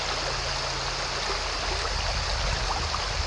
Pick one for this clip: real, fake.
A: real